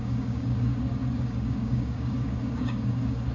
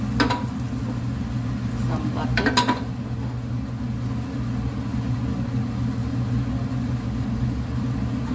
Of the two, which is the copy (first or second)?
first